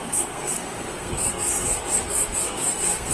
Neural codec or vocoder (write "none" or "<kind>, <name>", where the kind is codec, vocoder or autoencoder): codec, SNAC